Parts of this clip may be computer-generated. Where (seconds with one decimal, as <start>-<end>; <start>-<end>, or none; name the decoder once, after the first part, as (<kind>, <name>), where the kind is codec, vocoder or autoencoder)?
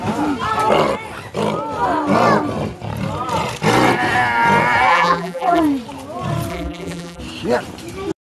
4.9-5.6 (vocoder, BigVGAN v2); 6.5-7.2